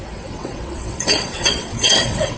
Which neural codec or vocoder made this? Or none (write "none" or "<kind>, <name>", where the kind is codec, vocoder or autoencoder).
vocoder, WaveNeXt